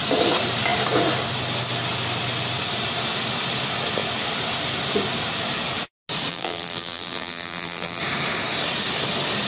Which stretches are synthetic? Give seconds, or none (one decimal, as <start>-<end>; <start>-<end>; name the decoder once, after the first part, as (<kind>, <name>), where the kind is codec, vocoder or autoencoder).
6.3-8.0 (vocoder, BigVGAN v2)